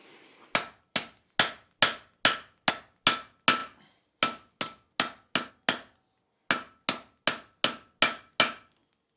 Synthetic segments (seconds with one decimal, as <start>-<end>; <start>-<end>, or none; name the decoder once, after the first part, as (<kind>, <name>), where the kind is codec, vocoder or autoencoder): none